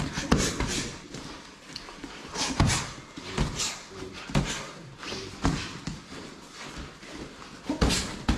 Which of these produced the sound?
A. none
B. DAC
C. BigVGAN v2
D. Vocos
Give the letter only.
C